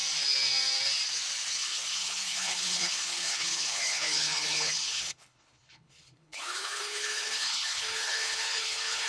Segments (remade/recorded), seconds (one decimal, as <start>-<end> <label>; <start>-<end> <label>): 0.0-1.5 recorded; 1.5-9.1 remade